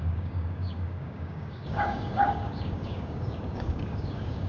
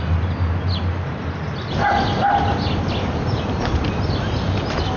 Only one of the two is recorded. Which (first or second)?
second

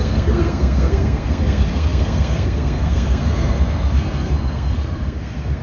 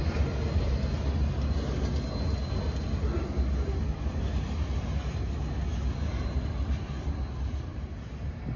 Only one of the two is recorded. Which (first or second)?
second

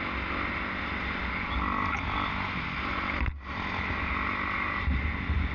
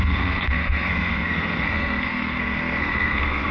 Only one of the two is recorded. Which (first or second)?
first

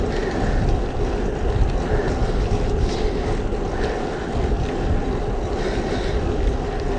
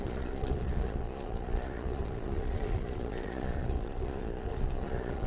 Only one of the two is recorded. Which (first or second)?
first